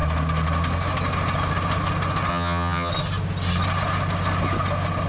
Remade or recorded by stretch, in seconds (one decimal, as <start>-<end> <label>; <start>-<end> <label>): 0.0-2.3 recorded; 2.3-2.9 remade; 2.9-5.1 recorded